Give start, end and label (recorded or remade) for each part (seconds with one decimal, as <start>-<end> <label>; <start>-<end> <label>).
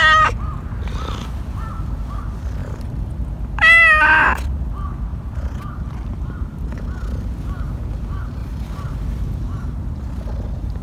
0.0-2.6 recorded; 2.6-3.1 remade; 3.1-5.1 recorded; 5.1-5.6 remade; 5.6-10.8 recorded